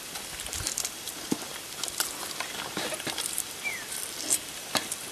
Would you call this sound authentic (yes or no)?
no